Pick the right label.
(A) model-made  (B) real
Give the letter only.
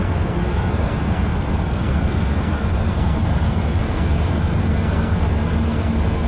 A